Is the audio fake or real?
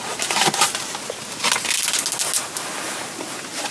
real